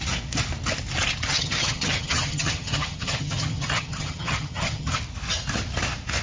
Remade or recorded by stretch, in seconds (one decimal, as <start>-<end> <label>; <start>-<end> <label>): 0.0-1.3 recorded; 1.3-5.0 remade; 5.0-6.2 recorded